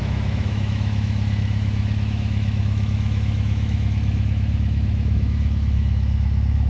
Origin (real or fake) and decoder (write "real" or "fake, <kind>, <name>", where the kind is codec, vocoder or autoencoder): fake, autoencoder, DAC-VAE